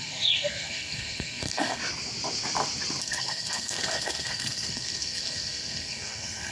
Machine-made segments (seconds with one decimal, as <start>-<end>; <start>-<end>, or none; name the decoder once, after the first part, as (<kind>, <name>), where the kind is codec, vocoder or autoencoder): 0.0-1.8 (codec, SNAC); 3.0-6.5